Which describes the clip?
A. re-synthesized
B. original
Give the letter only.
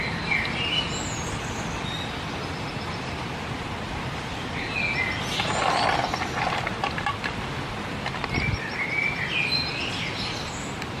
B